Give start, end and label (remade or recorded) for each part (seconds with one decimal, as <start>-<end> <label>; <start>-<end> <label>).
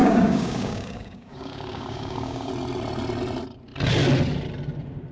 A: 0.0-2.5 remade; 2.5-5.1 recorded